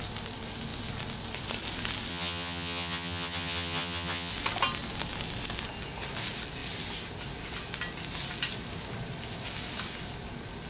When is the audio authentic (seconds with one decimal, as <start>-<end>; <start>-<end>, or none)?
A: 0.0-2.1; 4.3-10.7

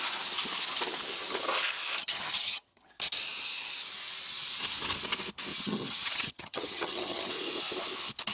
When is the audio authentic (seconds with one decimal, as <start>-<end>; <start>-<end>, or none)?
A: 0.0-2.0; 2.8-5.5; 7.3-8.3

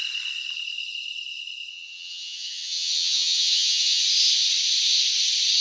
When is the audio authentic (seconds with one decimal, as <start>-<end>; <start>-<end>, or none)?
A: 0.0-1.7; 4.0-5.6